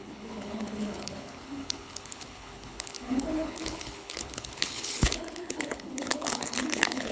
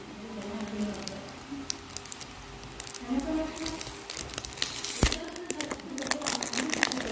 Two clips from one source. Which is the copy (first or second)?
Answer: first